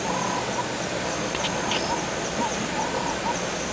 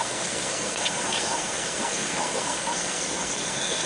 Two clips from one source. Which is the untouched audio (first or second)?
first